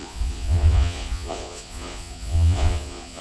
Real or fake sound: fake